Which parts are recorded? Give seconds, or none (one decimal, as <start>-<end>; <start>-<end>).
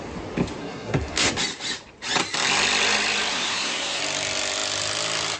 0.0-0.6; 1.3-3.3; 4.0-5.4